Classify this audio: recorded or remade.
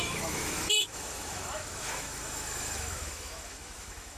remade